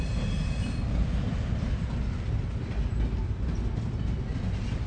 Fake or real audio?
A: real